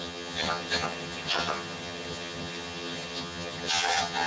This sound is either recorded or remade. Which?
remade